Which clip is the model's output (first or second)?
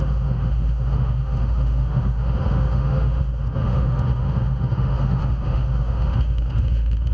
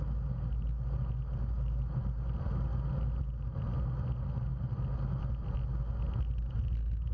first